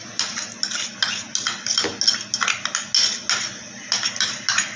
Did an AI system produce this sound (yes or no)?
no